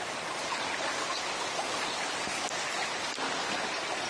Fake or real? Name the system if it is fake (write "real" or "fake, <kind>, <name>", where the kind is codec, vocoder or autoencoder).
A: real